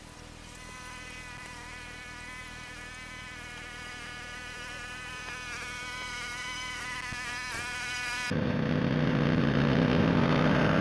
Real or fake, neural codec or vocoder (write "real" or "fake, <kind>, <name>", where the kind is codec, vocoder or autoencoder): real